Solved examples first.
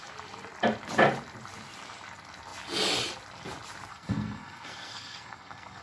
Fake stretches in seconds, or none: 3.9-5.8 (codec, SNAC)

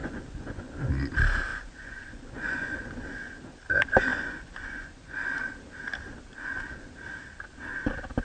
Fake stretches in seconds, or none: 0.0-0.7 (vocoder, Vocos); 1.5-3.3; 4.1-5.2

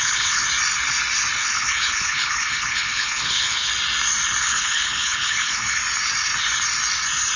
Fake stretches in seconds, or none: 0.0-0.4 (codec, HILCodec); 1.4-3.7; 4.4-5.8